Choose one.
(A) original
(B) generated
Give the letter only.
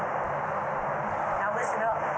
A